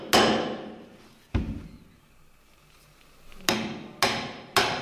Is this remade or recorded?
recorded